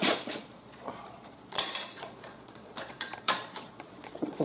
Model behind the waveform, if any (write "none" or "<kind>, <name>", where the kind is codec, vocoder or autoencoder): vocoder, Vocos